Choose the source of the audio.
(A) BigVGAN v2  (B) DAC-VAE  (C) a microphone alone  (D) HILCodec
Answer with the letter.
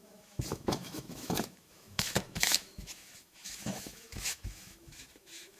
B